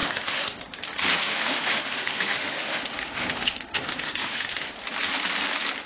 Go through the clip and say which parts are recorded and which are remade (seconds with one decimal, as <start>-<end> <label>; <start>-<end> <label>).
0.0-0.6 remade; 0.6-1.2 recorded; 1.2-4.7 remade; 4.7-5.9 recorded